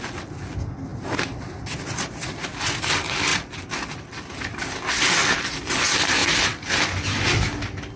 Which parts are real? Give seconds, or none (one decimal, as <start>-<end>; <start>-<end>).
0.0-0.9; 2.3-6.2; 6.9-8.0